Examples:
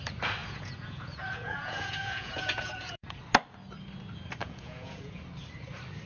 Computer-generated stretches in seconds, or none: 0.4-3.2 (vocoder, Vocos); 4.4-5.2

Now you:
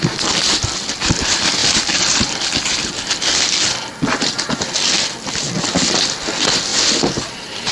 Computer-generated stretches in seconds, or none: 1.6-2.8 (vocoder, BigVGAN v2); 6.7-7.7

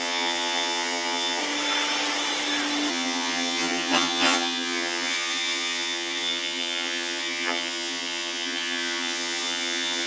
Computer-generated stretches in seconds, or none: 0.0-1.4 (vocoder, HiFi-GAN); 2.9-10.1

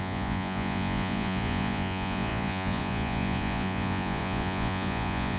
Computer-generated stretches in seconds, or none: 0.0-5.4 (vocoder, Vocos)

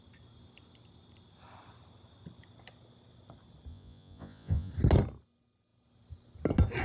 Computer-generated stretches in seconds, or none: 3.7-4.7 (vocoder, Vocos)

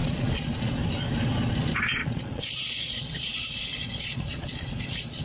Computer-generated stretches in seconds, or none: 0.0-0.7 (vocoder, Vocos); 2.0-5.2

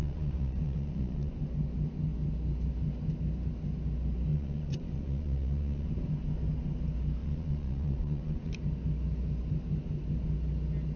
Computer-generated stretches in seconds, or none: 0.0-1.3 (vocoder, Vocos); 4.3-5.9; 7.2-8.5

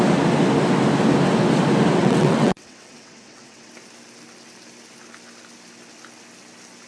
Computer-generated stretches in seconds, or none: 2.0-3.7 (vocoder, WaveNeXt)